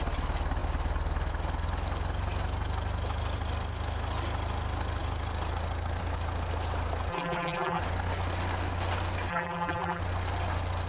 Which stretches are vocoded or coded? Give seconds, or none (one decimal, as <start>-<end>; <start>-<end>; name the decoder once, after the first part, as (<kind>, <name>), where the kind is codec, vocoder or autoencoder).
7.1-7.8 (vocoder, BigVGAN v2); 9.3-10.0